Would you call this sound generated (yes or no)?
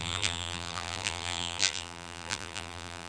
yes